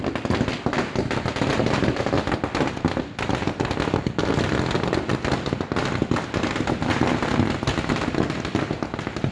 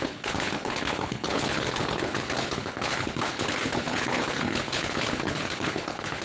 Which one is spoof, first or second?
second